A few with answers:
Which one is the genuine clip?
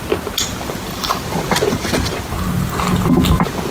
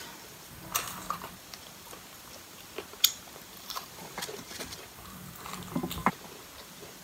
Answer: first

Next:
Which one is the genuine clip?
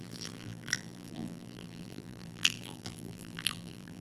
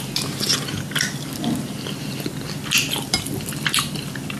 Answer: second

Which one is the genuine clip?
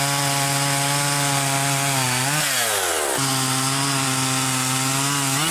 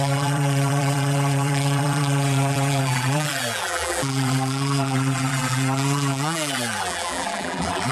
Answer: first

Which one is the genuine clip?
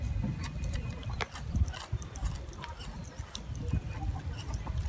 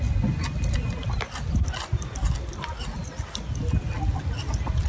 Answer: second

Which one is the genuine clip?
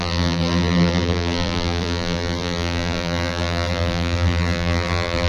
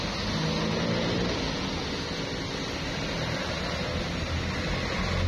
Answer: second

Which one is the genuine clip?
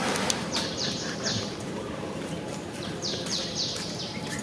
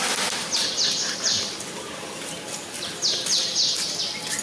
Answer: second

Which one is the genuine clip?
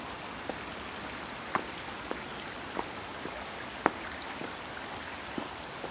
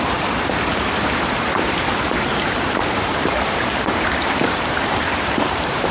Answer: first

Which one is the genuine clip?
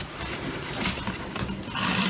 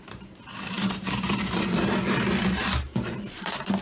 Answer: first